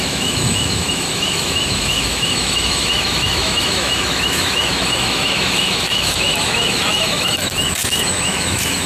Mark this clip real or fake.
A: fake